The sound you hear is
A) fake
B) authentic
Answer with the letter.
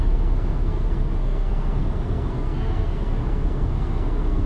A